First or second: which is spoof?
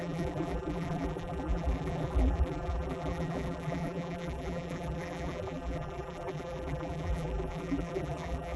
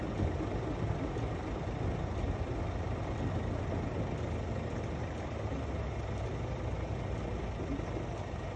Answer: first